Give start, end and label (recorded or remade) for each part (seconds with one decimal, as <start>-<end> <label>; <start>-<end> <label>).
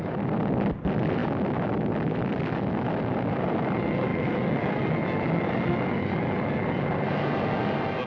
0.0-8.1 recorded